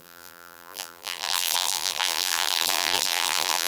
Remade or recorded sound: remade